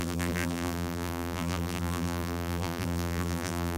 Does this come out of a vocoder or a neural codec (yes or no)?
yes